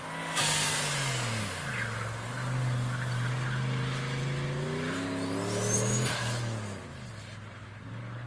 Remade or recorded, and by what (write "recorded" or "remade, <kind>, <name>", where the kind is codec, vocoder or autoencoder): recorded